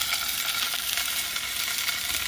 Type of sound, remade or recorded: recorded